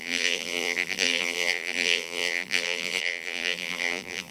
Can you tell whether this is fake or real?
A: fake